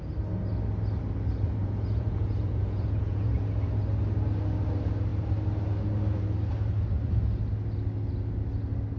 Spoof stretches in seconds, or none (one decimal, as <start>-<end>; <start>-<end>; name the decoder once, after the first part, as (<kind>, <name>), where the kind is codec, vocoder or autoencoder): 1.6-3.4 (vocoder, Vocos)

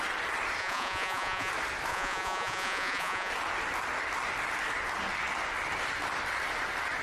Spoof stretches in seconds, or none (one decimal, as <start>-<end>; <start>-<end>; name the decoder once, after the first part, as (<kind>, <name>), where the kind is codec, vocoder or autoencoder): 0.6-1.5 (vocoder, Vocos); 1.9-3.3

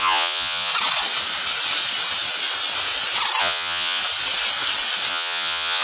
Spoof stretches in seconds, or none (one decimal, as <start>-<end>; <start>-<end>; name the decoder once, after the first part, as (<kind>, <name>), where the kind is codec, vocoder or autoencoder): 0.0-0.7 (vocoder, Vocos); 3.4-4.0; 5.1-5.8

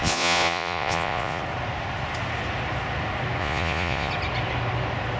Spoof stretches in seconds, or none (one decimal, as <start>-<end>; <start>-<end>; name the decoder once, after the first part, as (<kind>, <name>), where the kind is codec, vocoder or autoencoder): 0.0-1.4 (vocoder, Vocos); 3.4-4.1

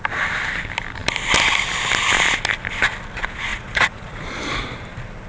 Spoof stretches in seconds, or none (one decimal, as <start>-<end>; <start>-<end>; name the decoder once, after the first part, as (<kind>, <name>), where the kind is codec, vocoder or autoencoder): 3.5-4.2 (vocoder, Vocos)

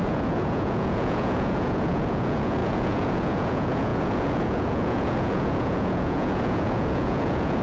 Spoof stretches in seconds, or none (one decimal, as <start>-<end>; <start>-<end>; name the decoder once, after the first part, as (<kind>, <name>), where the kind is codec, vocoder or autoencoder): 0.0-7.6 (vocoder, Vocos)